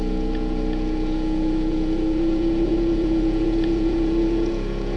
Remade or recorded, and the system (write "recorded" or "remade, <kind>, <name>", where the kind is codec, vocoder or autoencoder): remade, vocoder, Vocos